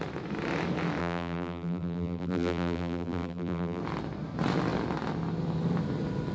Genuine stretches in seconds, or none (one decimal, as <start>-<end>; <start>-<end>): 0.0-1.0; 3.8-6.3